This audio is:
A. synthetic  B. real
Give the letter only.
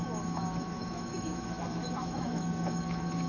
A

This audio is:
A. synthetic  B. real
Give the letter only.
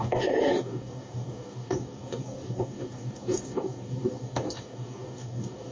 A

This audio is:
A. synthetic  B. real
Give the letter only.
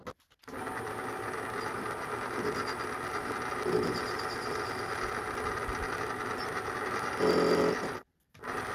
B